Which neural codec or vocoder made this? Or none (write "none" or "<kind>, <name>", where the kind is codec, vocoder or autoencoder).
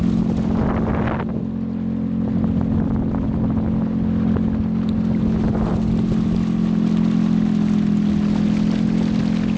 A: none